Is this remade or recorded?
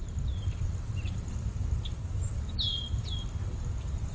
recorded